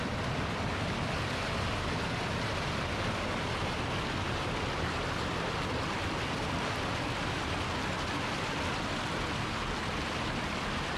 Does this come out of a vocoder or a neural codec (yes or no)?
no